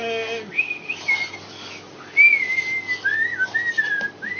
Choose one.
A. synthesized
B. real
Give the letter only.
B